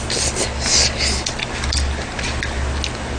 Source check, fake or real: real